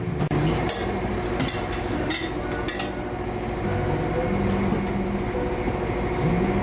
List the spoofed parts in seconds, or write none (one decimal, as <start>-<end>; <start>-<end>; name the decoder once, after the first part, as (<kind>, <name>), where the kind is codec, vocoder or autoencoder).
none